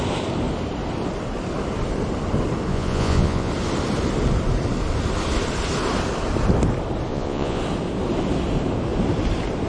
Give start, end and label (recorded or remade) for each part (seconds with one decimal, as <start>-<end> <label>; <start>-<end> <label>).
0.0-2.7 recorded; 2.7-3.5 remade; 3.5-7.1 recorded; 7.1-7.6 remade; 7.6-9.7 recorded